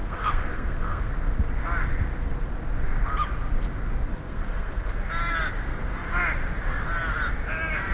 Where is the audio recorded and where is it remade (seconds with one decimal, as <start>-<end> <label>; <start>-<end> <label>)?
0.0-1.1 remade; 1.1-4.1 recorded; 4.1-4.9 remade; 4.9-7.9 recorded